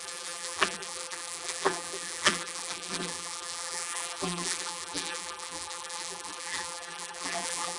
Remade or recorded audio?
remade